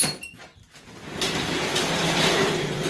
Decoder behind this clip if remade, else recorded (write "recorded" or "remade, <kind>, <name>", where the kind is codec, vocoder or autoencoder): recorded